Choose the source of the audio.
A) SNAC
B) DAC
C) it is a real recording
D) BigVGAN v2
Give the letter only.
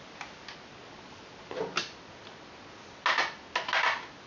C